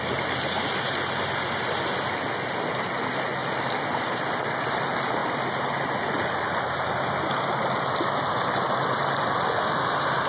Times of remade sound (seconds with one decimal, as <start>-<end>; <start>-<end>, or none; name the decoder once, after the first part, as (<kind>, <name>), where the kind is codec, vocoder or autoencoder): none